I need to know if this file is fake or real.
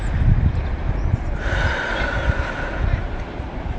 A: real